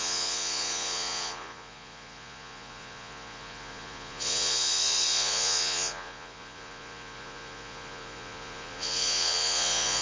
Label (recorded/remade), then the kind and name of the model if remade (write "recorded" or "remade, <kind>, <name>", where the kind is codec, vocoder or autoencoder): remade, vocoder, Vocos